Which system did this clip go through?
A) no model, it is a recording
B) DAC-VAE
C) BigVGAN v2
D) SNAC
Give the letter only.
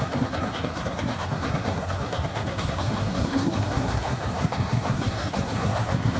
D